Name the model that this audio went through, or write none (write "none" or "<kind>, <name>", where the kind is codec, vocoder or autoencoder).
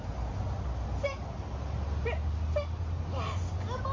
none